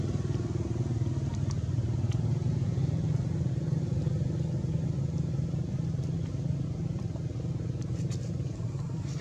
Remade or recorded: recorded